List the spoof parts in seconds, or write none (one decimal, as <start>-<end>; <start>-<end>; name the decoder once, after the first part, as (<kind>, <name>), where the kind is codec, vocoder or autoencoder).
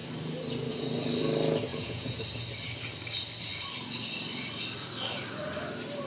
1.7-2.2 (vocoder, Vocos)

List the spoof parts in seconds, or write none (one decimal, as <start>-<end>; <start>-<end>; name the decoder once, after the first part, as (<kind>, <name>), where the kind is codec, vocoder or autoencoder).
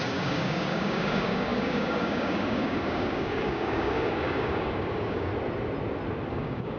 0.0-5.3 (codec, DAC); 6.3-6.8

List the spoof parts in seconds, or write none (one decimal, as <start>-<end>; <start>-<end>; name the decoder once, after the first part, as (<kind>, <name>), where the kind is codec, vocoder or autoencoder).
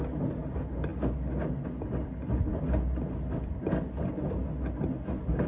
none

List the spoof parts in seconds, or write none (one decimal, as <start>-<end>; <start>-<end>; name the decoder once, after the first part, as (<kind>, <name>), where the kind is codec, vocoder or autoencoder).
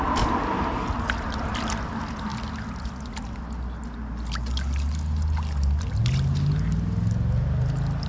none